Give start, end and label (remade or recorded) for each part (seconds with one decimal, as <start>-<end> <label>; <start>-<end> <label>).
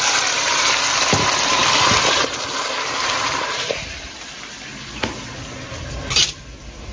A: 0.0-6.9 recorded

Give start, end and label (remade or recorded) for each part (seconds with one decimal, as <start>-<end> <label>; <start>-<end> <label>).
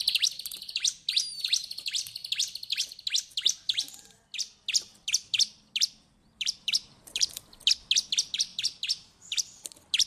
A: 0.0-6.2 recorded; 6.2-7.7 remade; 7.7-10.1 recorded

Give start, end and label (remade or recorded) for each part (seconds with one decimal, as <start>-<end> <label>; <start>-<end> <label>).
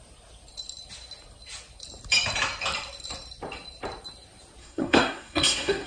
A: 0.0-4.6 recorded; 4.6-5.9 remade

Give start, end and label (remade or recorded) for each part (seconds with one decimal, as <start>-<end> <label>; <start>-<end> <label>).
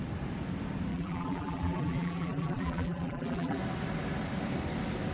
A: 0.0-0.9 recorded; 0.9-3.6 remade; 3.6-5.1 recorded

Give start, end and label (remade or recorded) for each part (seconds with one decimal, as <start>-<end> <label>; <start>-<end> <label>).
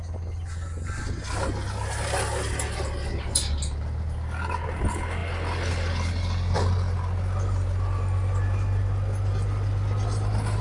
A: 0.0-10.6 recorded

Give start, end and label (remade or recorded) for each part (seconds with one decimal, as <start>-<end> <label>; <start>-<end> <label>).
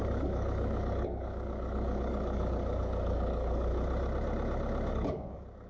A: 0.0-3.7 remade; 3.7-4.9 recorded; 4.9-5.7 remade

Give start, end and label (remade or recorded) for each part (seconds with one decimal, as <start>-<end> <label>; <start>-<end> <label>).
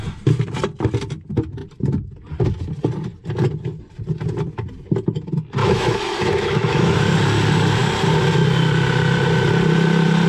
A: 0.0-5.6 recorded; 5.6-7.0 remade; 7.0-10.3 recorded